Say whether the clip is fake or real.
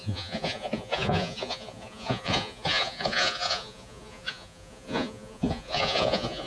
fake